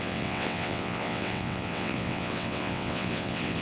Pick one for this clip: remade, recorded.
remade